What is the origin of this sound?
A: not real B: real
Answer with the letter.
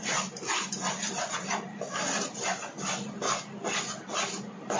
B